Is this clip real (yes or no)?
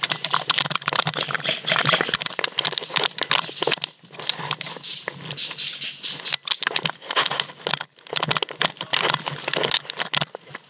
yes